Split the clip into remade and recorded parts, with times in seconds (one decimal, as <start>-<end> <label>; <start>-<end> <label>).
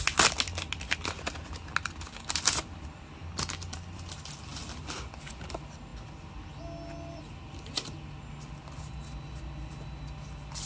0.0-3.2 recorded; 3.2-4.0 remade; 4.0-4.5 recorded; 4.5-5.2 remade; 5.2-10.7 recorded